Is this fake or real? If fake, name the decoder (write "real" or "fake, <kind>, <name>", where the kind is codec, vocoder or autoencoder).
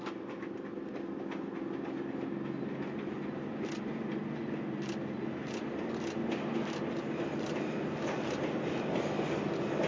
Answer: real